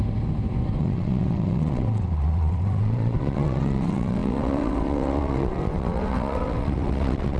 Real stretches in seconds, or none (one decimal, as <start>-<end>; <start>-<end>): 0.0-0.8